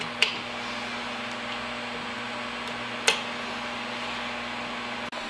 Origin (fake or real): real